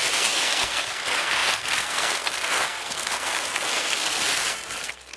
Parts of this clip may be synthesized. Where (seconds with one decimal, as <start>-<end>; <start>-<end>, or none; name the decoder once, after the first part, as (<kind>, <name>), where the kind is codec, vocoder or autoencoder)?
0.0-5.2 (codec, SNAC)